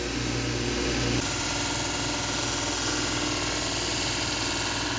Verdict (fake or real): real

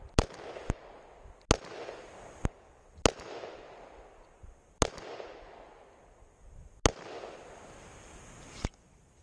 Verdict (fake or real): real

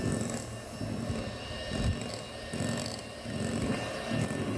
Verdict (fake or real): real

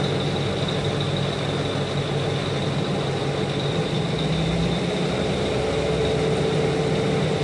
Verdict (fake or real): real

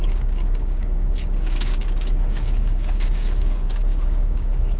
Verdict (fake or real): fake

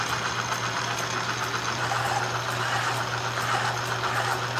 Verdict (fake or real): real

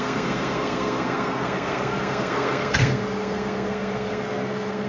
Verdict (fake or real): fake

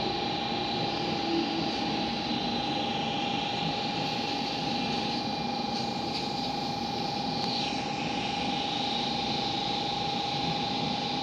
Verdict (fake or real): real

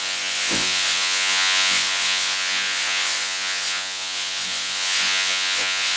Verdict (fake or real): fake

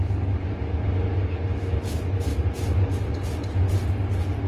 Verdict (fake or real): real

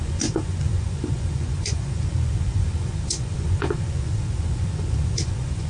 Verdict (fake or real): fake